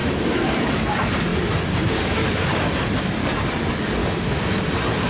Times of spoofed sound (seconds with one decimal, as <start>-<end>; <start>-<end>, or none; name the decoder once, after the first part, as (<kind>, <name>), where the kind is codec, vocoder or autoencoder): 0.0-0.8 (autoencoder, DAC-VAE); 4.0-4.6